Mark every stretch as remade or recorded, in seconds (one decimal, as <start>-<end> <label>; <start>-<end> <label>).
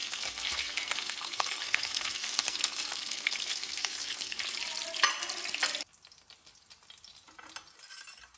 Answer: 0.0-4.4 remade; 4.4-8.4 recorded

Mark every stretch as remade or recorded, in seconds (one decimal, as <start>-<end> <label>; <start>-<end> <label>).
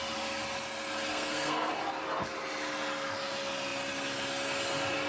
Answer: 0.0-1.1 recorded; 1.1-1.7 remade; 1.7-5.1 recorded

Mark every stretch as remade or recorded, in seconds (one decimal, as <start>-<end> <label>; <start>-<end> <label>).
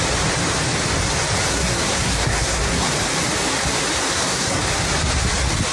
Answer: 0.0-1.5 recorded; 1.5-2.9 remade; 2.9-4.1 recorded; 4.1-4.6 remade; 4.6-5.7 recorded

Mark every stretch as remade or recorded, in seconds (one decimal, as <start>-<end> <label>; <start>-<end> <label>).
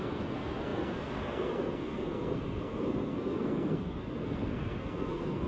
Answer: 0.0-5.5 remade